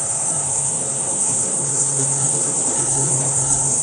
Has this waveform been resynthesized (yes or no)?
yes